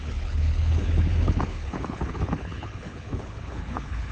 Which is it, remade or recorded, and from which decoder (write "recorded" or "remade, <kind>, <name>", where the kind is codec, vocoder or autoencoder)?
remade, codec, HILCodec